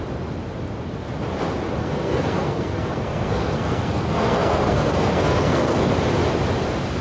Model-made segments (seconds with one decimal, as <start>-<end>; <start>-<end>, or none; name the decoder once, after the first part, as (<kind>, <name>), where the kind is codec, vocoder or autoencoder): 1.8-5.9 (codec, SNAC)